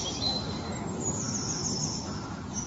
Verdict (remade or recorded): recorded